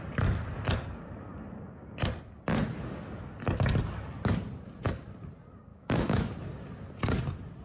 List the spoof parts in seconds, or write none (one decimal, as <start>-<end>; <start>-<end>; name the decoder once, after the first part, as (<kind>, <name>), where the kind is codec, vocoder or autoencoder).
5.7-6.3 (autoencoder, DAC-VAE)